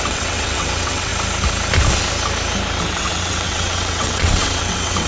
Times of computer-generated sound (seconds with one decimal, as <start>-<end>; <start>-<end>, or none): 0.0-1.1; 2.8-5.1